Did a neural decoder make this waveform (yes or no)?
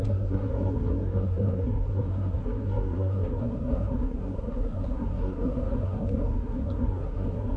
yes